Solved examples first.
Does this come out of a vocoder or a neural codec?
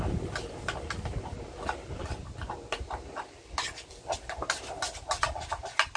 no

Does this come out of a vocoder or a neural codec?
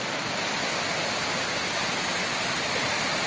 yes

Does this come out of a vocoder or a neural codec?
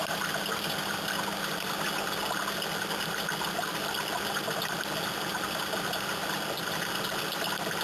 no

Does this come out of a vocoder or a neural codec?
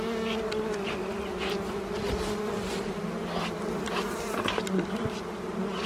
no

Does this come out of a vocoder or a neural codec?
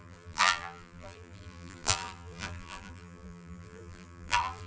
yes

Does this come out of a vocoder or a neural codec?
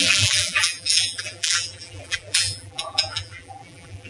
yes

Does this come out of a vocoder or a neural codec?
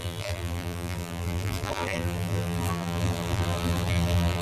yes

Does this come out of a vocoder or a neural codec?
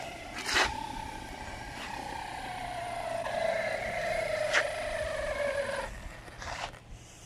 no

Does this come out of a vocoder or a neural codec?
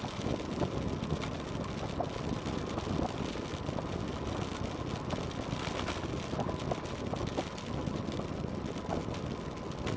no